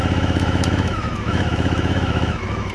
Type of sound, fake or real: fake